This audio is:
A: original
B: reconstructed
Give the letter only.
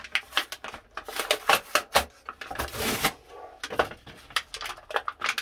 A